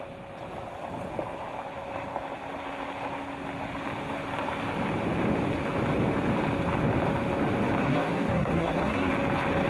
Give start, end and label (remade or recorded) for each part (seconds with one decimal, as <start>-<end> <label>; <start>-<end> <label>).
0.0-7.8 recorded; 7.8-9.1 remade; 9.1-9.7 recorded